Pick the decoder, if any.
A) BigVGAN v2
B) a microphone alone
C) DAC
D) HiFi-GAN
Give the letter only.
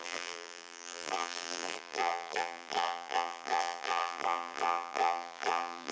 A